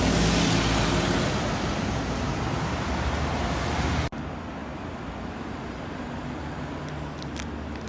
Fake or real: real